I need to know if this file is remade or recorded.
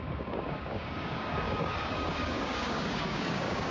remade